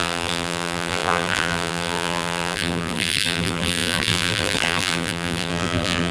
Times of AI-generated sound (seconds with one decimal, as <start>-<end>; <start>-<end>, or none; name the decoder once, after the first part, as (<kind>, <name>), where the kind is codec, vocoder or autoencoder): 0.0-6.1 (vocoder, BigVGAN v2)